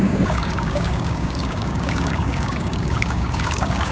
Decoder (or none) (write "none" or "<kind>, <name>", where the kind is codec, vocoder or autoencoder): codec, DAC